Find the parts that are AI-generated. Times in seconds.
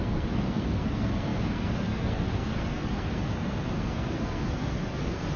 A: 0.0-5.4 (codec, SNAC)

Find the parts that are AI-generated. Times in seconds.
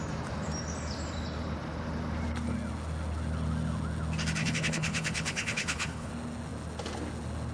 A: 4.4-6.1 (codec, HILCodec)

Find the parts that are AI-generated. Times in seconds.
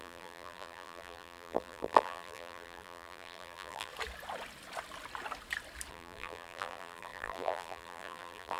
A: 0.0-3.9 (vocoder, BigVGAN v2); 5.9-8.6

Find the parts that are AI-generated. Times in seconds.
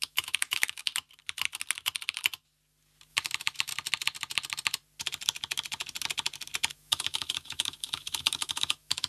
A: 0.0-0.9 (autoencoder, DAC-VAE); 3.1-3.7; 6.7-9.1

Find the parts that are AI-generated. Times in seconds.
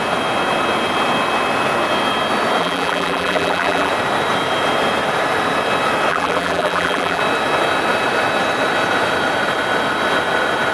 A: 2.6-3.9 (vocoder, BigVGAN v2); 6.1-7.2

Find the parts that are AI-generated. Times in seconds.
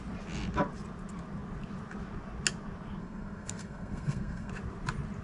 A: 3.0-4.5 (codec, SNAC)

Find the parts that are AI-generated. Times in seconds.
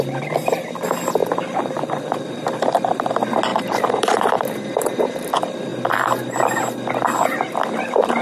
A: 1.2-3.1 (vocoder, BigVGAN v2); 3.5-5.3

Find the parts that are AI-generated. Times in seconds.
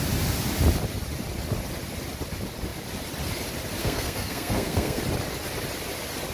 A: 3.8-5.0 (codec, SNAC)